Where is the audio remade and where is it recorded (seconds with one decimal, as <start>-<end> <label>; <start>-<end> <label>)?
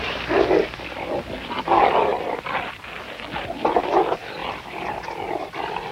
0.0-0.6 recorded; 0.6-1.2 remade; 1.2-2.1 recorded; 2.1-2.7 remade; 2.7-4.4 recorded; 4.4-5.9 remade